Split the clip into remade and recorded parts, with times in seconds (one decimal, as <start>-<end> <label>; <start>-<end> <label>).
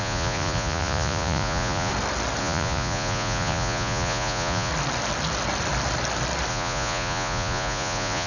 0.0-1.9 remade; 1.9-2.4 recorded; 2.4-4.7 remade; 4.7-6.5 recorded; 6.5-8.3 remade